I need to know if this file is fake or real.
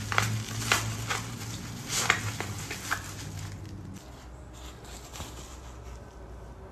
real